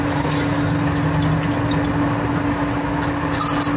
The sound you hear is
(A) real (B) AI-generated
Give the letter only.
A